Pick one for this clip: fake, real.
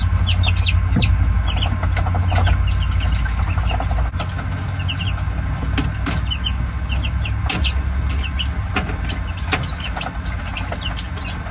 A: real